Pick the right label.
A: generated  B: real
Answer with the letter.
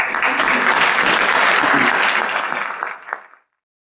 B